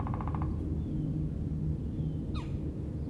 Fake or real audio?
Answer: real